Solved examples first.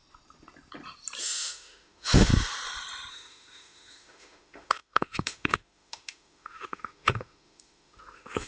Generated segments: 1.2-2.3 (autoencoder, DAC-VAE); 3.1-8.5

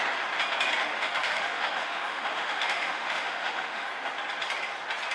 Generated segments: 1.0-3.9 (autoencoder, DAC-VAE)